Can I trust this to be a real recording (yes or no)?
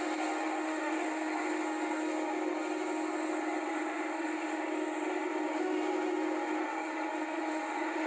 no